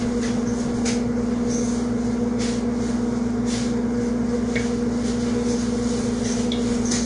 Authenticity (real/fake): real